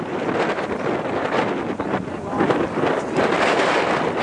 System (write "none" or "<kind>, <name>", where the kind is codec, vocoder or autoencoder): none